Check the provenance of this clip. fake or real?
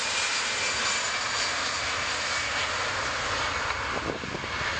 real